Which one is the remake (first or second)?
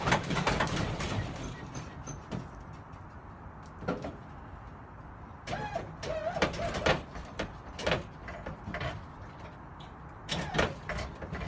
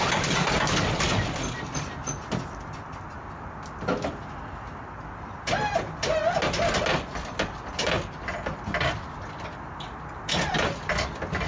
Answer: first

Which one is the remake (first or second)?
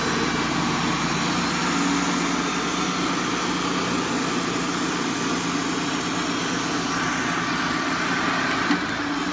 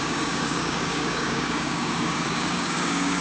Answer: second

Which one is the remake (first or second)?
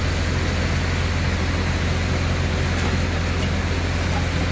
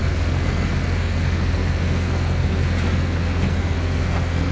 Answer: second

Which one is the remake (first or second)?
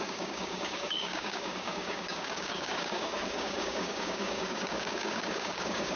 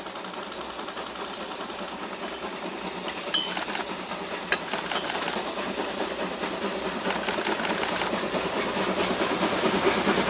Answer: first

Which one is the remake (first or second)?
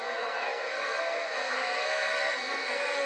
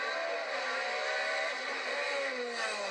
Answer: first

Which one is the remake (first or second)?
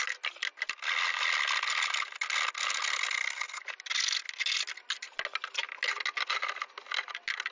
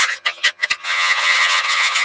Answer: second